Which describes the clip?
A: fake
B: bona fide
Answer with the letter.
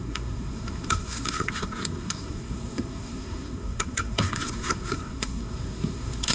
A